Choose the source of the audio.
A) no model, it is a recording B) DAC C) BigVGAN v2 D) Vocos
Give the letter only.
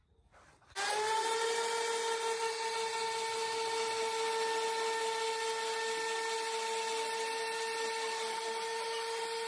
A